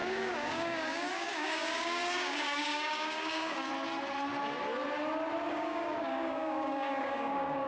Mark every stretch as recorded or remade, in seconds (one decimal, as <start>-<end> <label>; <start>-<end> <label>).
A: 0.0-3.7 remade; 3.7-5.5 recorded; 5.5-7.7 remade